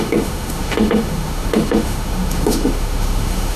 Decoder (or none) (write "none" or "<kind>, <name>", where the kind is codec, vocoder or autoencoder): autoencoder, DAC-VAE